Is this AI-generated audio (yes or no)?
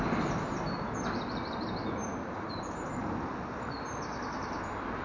no